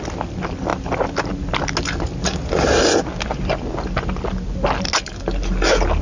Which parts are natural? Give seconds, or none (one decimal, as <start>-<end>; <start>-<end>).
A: 0.0-6.0